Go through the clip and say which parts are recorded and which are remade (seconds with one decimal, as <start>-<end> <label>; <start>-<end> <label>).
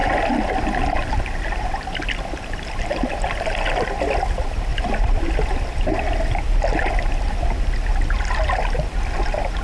0.0-9.6 recorded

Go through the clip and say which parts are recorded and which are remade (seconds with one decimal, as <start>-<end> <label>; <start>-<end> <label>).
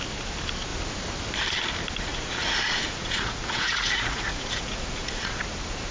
0.0-2.1 recorded; 2.1-5.4 remade; 5.4-5.9 recorded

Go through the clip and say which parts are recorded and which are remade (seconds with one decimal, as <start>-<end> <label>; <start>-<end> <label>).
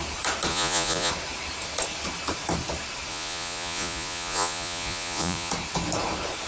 0.0-0.5 recorded; 0.5-1.1 remade; 1.1-3.1 recorded; 3.1-5.5 remade; 5.5-6.5 recorded